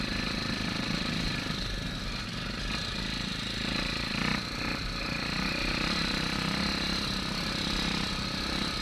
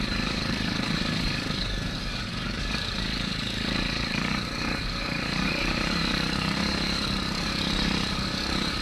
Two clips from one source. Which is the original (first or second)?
first